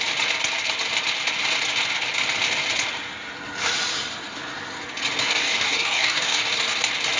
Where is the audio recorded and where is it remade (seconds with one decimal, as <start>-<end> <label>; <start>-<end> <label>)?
0.0-5.2 recorded; 5.2-6.4 remade; 6.4-7.2 recorded